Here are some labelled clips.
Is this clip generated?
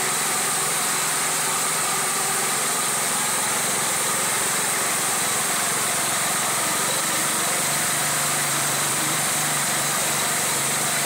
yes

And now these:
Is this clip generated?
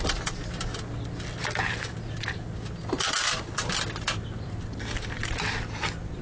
no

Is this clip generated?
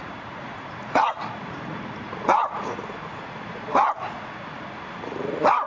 yes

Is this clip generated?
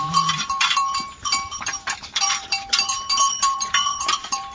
yes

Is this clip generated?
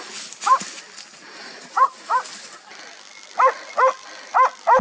no